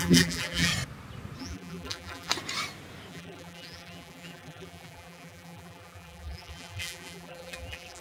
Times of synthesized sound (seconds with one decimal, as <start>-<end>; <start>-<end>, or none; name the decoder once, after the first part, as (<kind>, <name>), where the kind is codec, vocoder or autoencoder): 0.0-0.7 (vocoder, BigVGAN v2); 1.4-2.3; 3.1-8.0